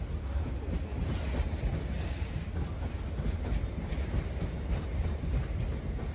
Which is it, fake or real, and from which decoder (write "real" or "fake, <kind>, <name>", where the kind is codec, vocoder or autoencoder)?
real